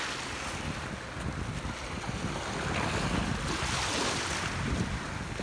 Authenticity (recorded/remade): recorded